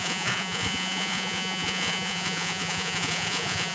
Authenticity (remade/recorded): remade